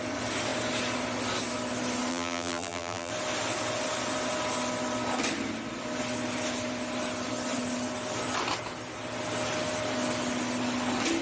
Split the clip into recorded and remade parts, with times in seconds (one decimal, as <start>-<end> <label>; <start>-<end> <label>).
0.0-2.1 recorded; 2.1-3.1 remade; 3.1-11.2 recorded